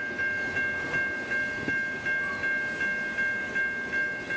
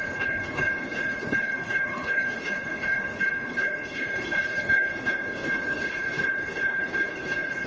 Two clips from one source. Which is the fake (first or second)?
second